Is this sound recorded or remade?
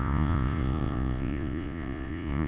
remade